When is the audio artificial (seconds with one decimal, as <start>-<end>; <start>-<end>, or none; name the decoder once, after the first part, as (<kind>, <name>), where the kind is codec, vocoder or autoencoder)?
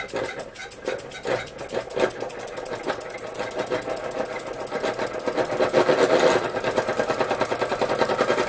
none